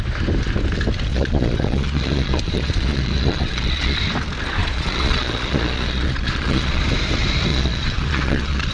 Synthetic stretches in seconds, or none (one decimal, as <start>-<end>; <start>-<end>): 1.1-4.0; 4.6-6.8; 7.5-8.7